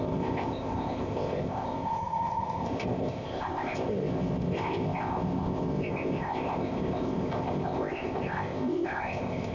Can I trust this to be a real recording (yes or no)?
no